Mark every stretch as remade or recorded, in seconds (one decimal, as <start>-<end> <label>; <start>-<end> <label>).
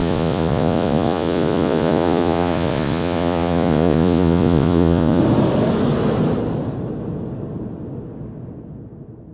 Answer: 0.0-5.2 remade; 5.2-9.3 recorded